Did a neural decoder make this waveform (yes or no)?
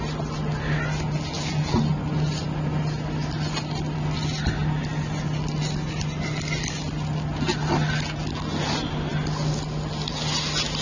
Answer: no